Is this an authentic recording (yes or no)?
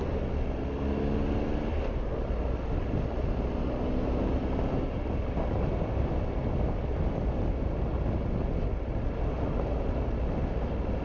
yes